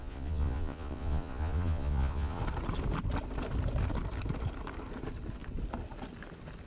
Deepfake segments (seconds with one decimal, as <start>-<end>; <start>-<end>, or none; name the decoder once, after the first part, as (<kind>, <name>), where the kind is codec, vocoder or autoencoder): 0.0-2.4 (vocoder, Vocos)

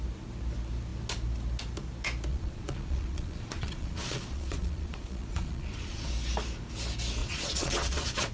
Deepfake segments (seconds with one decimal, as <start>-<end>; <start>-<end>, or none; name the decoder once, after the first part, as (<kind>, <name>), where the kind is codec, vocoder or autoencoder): 2.3-6.1 (vocoder, Vocos); 7.2-8.3

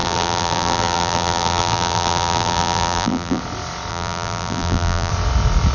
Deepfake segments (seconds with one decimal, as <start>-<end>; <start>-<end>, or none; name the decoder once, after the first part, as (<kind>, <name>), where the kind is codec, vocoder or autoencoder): 0.0-3.4 (vocoder, BigVGAN v2); 3.9-5.1

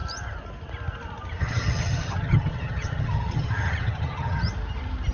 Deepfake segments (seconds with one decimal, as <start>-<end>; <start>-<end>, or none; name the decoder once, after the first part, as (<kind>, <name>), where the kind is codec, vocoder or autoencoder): 1.4-4.5 (vocoder, HiFi-GAN)

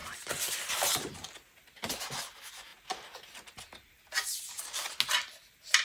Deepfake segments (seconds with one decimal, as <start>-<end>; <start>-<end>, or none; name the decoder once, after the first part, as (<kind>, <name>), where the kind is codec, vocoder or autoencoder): 0.0-0.5 (vocoder, BigVGAN v2)